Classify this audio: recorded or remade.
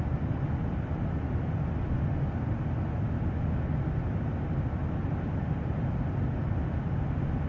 recorded